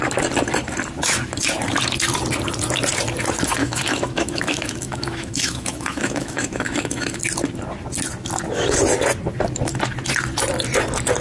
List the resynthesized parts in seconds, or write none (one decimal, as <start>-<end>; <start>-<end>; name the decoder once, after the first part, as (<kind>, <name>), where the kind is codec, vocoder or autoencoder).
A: 3.6-7.2 (autoencoder, DAC-VAE)